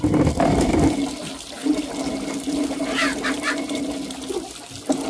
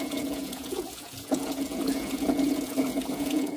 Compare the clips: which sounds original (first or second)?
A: first